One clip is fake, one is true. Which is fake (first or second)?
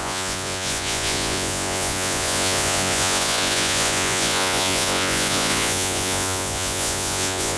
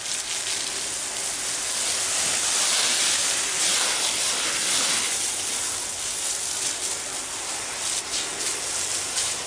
first